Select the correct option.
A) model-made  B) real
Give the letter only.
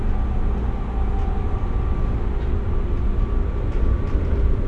B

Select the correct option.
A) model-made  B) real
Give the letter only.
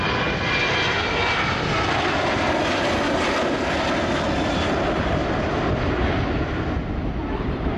B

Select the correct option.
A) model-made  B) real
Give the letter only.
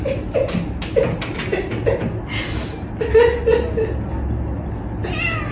B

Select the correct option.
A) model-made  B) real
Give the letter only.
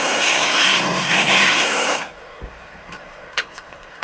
A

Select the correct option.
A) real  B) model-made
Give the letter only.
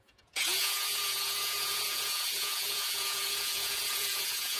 B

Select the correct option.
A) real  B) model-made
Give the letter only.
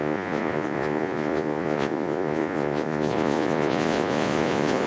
B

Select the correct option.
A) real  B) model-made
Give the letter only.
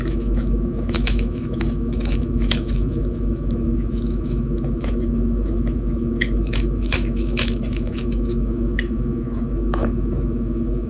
B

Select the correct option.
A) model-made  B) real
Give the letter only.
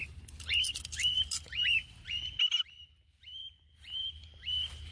B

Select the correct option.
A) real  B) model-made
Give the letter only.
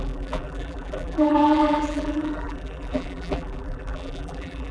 B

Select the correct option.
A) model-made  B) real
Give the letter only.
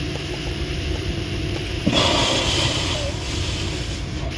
B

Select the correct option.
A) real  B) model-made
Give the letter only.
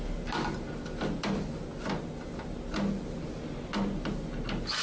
A